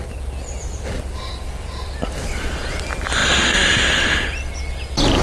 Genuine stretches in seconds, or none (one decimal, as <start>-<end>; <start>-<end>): 0.0-5.2